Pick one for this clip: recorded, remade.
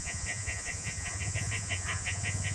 remade